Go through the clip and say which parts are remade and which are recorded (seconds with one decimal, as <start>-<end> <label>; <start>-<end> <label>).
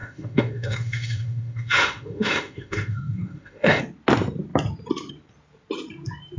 0.0-3.8 remade; 3.8-6.4 recorded